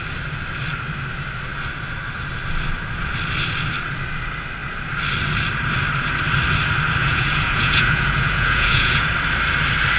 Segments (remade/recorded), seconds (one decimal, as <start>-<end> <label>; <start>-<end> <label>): 0.0-7.0 recorded; 7.0-9.1 remade; 9.1-10.0 recorded